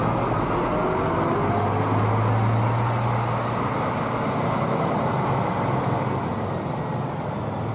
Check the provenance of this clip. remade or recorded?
recorded